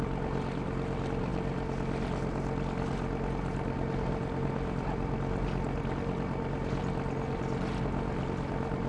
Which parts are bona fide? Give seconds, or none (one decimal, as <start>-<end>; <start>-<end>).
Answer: 0.0-8.9